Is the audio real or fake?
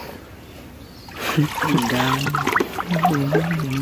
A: real